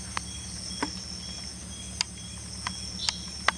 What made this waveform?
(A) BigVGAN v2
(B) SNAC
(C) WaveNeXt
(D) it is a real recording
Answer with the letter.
D